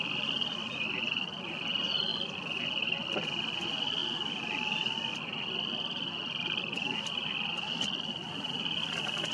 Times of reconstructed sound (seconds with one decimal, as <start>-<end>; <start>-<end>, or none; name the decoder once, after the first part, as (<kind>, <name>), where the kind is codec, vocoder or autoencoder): none